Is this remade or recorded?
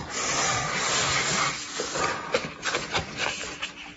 recorded